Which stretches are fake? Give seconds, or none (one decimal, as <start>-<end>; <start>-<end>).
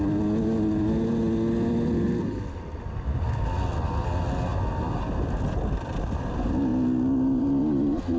none